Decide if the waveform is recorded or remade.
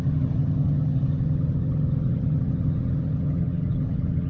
remade